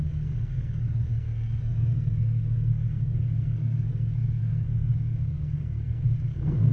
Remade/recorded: remade